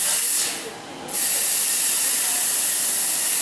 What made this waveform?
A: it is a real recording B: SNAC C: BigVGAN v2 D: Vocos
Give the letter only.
A